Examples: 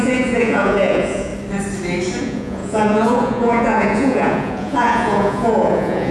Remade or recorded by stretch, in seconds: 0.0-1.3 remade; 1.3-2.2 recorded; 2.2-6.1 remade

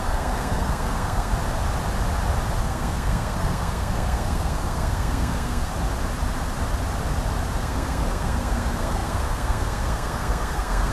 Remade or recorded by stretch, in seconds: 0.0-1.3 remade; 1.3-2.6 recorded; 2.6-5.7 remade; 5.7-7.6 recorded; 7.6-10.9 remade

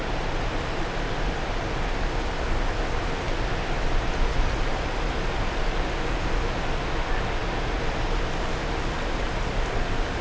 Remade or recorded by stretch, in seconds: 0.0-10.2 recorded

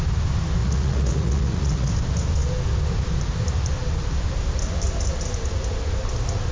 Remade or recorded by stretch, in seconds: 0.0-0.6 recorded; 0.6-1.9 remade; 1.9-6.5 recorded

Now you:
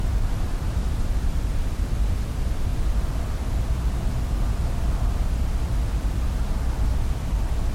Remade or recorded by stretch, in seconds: 0.0-2.2 remade; 2.2-7.7 recorded

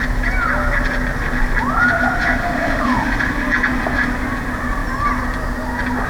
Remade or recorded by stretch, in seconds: 0.0-2.4 recorded; 2.4-3.1 remade; 3.1-6.1 recorded

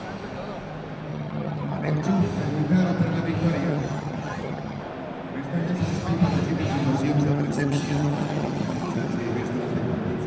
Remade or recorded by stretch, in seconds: 0.0-1.1 recorded; 1.1-2.2 remade; 2.2-3.7 recorded; 3.7-4.8 remade; 4.8-7.3 recorded; 7.3-9.2 remade; 9.2-10.3 recorded

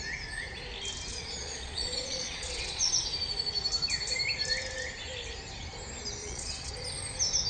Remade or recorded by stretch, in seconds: 0.0-1.1 recorded; 1.1-2.9 remade; 2.9-6.2 recorded; 6.2-6.7 remade; 6.7-7.5 recorded